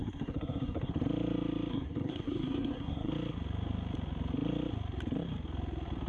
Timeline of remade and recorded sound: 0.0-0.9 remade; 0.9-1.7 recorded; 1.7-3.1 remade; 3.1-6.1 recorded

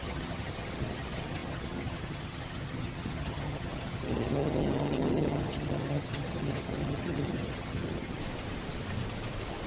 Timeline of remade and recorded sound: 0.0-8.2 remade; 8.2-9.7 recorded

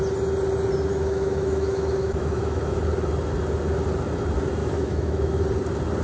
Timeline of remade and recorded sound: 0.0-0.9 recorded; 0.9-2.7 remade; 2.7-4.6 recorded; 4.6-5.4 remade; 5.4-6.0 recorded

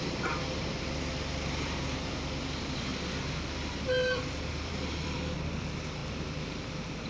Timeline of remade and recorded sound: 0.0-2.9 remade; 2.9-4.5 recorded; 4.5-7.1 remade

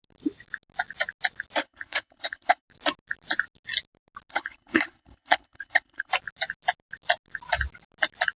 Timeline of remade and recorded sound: 0.0-1.6 recorded; 1.6-2.6 remade; 2.6-4.3 recorded; 4.3-6.1 remade; 6.1-8.4 recorded